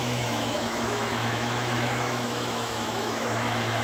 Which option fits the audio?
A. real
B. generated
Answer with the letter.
B